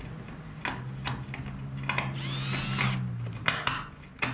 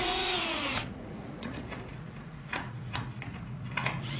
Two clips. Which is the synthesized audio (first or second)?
second